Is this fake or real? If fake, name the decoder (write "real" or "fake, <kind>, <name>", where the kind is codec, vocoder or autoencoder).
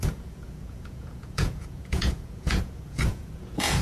fake, vocoder, Vocos